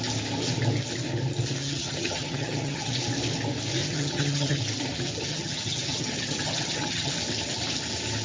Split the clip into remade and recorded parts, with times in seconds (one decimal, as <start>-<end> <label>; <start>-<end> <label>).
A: 0.0-1.6 recorded; 1.6-2.9 remade; 2.9-3.8 recorded; 3.8-4.6 remade; 4.6-5.3 recorded; 5.3-7.1 remade; 7.1-8.2 recorded